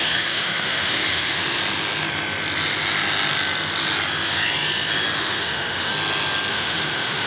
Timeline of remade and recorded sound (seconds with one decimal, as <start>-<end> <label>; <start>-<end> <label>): 0.0-1.6 remade; 1.6-5.2 recorded; 5.2-5.9 remade; 5.9-6.5 recorded; 6.5-7.3 remade